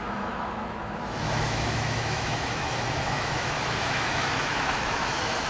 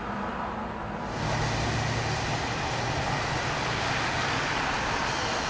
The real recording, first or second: second